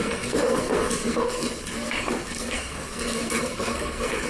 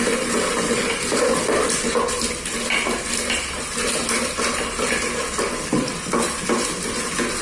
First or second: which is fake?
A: first